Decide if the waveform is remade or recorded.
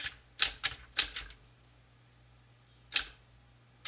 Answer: recorded